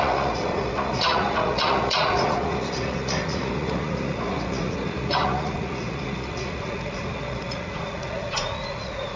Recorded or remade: remade